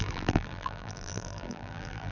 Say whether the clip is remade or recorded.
remade